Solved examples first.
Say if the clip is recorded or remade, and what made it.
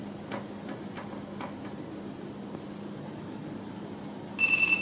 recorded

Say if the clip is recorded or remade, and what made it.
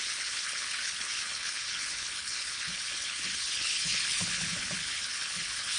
remade, codec, HILCodec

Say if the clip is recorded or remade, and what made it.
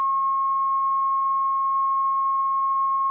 recorded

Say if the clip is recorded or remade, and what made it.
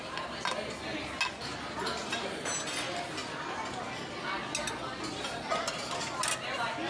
recorded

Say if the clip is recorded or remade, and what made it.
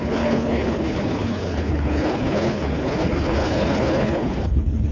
remade, codec, HILCodec